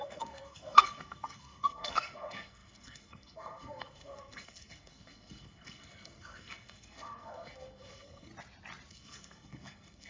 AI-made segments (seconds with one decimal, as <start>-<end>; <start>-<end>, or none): 0.0-8.3; 8.9-10.1